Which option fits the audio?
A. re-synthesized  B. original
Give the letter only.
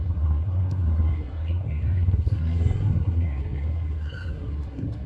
A